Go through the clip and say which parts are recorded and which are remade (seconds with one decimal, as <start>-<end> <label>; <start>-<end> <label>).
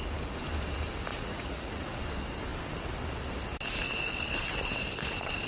0.0-1.1 recorded; 1.1-2.0 remade; 2.0-5.5 recorded